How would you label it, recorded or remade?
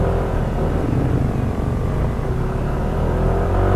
recorded